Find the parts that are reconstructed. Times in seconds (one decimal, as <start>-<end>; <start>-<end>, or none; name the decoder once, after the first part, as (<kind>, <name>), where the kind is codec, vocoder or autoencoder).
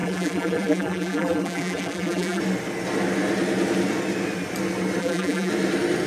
0.0-2.4 (vocoder, BigVGAN v2); 5.0-5.5